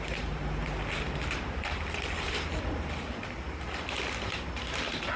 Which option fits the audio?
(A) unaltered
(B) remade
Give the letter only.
B